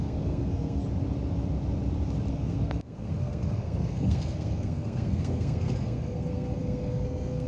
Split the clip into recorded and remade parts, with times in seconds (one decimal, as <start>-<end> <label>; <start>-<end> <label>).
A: 0.0-0.8 remade; 0.8-2.3 recorded; 2.3-7.5 remade